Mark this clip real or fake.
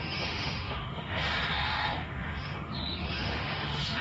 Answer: fake